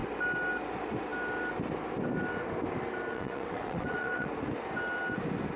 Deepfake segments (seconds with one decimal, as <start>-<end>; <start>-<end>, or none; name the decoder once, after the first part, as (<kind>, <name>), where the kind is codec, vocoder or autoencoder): 3.1-4.3 (vocoder, WaveNeXt)